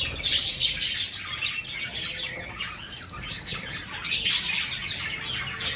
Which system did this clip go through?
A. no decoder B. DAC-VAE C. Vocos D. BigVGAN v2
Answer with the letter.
A